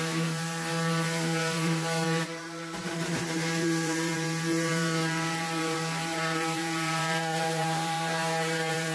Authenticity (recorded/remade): remade